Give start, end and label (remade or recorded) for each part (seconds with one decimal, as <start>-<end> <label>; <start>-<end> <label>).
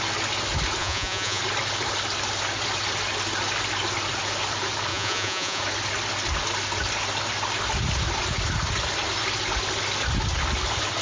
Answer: 0.0-0.8 recorded; 0.8-1.4 remade; 1.4-4.9 recorded; 4.9-5.6 remade; 5.6-11.0 recorded